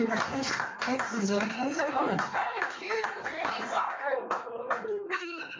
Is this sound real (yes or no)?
no